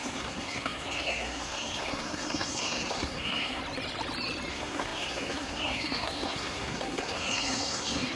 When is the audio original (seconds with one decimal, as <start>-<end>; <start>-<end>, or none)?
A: 3.6-4.5